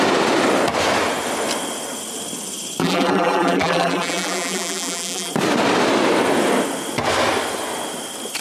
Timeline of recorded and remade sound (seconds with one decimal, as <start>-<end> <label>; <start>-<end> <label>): 0.0-2.8 recorded; 2.8-5.3 remade; 5.3-8.4 recorded